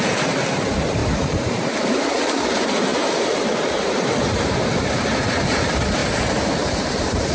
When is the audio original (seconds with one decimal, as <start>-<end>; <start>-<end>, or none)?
none